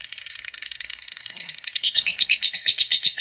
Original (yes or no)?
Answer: no